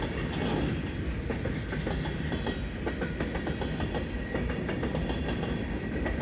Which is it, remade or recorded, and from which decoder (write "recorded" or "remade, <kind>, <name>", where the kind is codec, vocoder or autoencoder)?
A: recorded